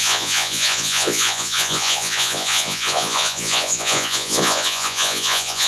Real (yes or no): no